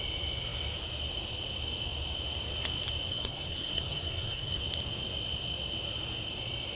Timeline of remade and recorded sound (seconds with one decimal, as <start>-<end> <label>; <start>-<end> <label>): 0.0-3.1 recorded; 3.1-4.6 remade; 4.6-6.8 recorded